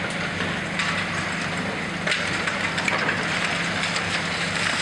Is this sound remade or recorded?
recorded